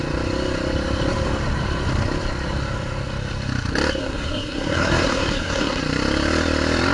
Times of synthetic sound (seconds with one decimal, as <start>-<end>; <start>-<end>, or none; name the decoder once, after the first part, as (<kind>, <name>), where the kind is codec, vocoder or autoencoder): 4.0-5.8 (codec, SNAC)